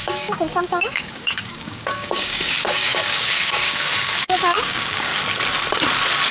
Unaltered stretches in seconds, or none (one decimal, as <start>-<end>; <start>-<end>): 5.1-6.3